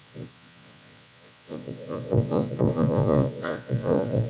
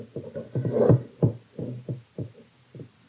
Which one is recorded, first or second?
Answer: second